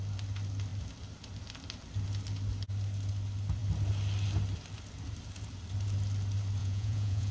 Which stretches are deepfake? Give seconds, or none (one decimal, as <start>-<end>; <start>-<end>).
6.6-7.3